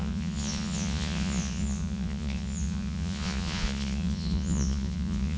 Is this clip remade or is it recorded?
remade